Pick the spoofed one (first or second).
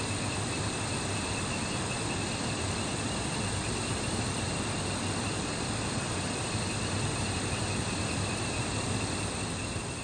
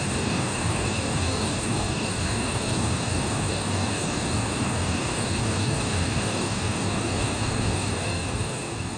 second